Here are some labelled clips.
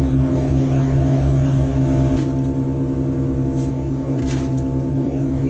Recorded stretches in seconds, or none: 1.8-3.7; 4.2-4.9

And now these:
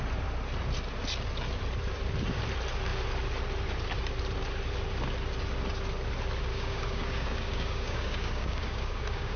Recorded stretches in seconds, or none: 0.0-6.5

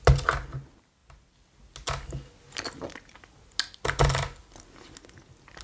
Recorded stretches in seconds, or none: 0.0-5.6

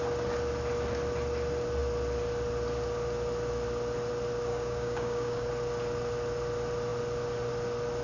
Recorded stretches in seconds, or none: 0.0-4.5; 5.5-8.0

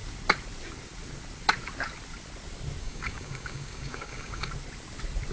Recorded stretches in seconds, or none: 0.0-2.8; 4.5-5.3

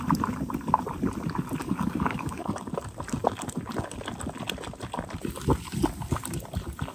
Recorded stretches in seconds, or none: 0.0-1.6; 2.7-6.9

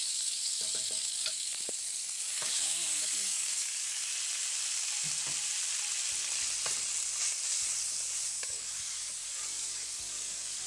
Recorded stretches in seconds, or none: 4.1-8.3